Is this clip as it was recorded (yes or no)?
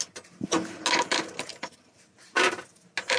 yes